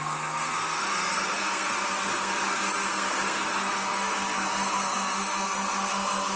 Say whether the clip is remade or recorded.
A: remade